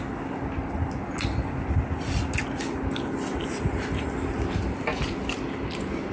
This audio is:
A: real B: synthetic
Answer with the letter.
A